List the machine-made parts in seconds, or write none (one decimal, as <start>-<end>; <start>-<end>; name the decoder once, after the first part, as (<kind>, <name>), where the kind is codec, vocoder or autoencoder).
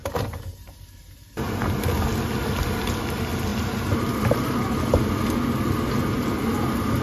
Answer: 0.0-1.8 (vocoder, BigVGAN v2)